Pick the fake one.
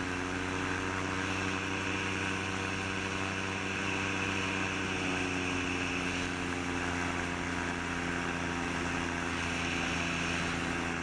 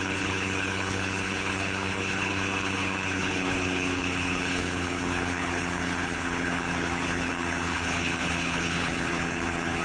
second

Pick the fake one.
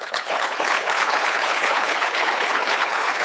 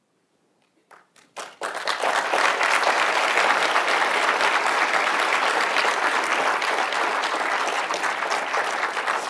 first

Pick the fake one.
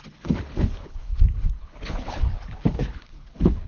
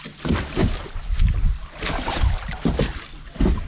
first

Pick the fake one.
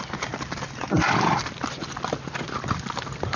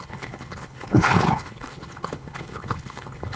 second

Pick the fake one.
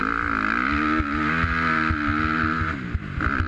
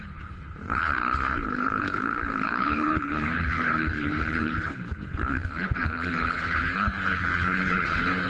second